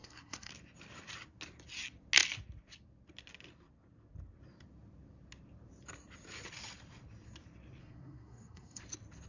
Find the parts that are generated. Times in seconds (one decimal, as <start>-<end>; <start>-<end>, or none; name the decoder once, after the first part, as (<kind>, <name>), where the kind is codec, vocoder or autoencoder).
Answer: 0.0-0.5 (codec, SNAC); 7.8-8.8